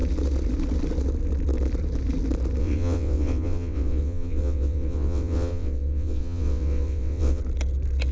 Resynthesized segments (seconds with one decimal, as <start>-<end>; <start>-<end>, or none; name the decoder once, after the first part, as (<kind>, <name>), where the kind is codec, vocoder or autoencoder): 2.6-7.4 (vocoder, WaveNeXt)